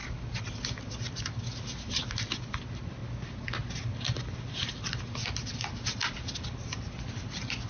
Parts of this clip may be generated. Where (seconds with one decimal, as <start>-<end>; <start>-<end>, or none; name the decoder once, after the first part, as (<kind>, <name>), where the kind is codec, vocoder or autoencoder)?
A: none